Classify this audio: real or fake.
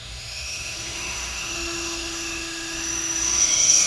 fake